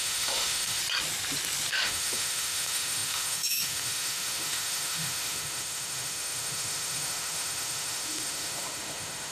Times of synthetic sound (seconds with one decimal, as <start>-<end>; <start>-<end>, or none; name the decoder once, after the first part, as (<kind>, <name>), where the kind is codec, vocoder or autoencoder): 0.0-0.8 (autoencoder, DAC-VAE); 1.7-9.3